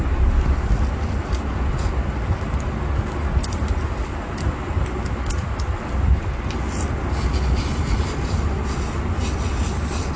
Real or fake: real